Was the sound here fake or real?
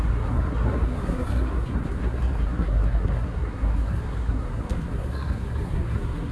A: fake